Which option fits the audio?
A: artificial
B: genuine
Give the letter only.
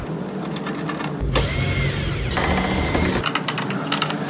B